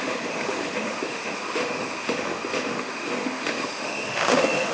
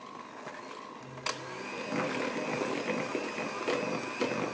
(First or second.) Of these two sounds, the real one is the second